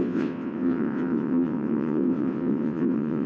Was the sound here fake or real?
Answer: fake